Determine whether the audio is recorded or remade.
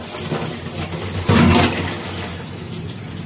recorded